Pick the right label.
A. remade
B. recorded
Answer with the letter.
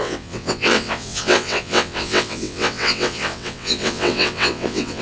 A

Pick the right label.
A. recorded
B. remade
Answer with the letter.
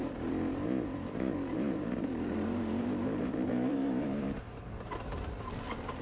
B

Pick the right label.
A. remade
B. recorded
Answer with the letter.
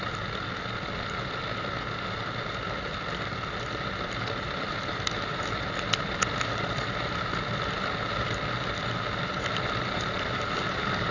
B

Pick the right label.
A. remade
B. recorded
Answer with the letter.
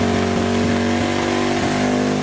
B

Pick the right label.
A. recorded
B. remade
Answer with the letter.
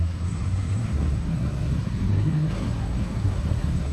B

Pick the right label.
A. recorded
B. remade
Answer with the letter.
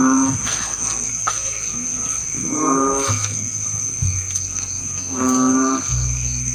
B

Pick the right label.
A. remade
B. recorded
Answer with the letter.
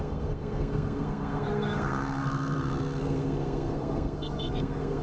A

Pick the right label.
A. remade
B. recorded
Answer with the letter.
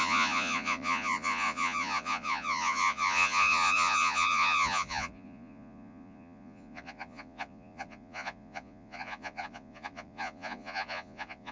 A